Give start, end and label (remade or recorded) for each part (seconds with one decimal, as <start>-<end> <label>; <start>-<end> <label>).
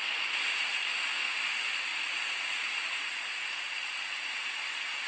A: 0.0-0.8 remade; 0.8-1.9 recorded; 1.9-4.2 remade; 4.2-5.1 recorded